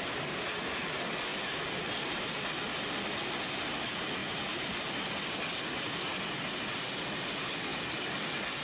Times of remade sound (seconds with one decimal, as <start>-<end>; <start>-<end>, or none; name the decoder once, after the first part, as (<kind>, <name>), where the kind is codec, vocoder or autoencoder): none